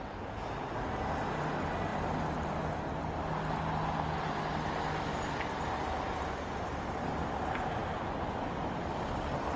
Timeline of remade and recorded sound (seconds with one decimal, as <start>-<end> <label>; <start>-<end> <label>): 0.0-9.6 recorded